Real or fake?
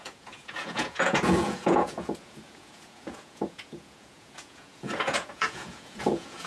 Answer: fake